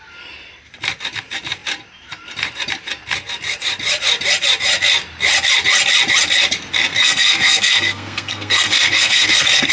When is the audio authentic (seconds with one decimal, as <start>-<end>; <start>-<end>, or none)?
0.0-6.9